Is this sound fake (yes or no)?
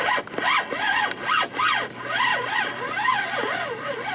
no